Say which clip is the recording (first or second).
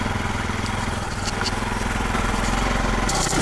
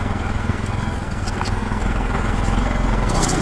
first